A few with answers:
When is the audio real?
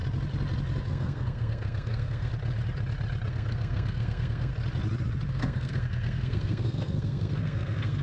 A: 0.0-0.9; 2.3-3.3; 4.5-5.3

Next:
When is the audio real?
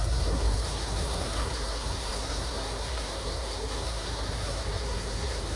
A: none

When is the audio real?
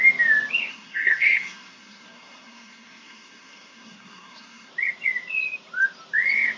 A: 0.0-0.7; 4.7-6.6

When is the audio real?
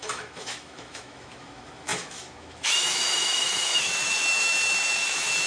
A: none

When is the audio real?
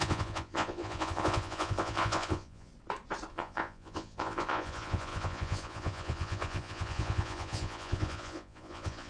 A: 2.7-3.3